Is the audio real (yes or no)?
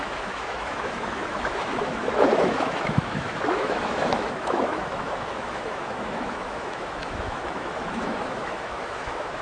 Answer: no